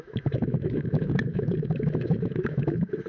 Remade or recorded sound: remade